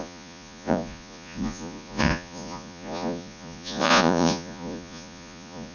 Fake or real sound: fake